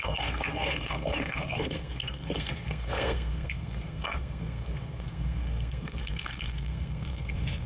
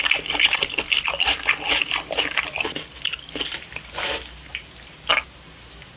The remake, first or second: first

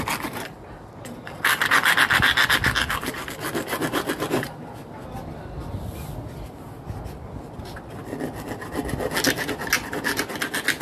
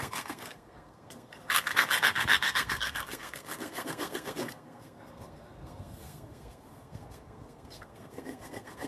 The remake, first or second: second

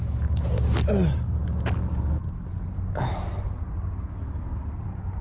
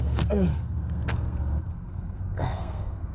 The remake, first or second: second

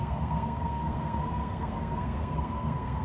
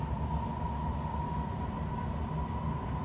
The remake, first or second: first